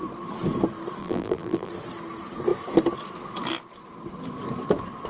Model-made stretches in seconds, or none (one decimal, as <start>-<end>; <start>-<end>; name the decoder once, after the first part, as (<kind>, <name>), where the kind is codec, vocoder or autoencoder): 1.0-1.7 (vocoder, BigVGAN v2)